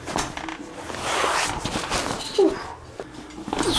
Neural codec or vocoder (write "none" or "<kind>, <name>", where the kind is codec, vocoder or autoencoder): none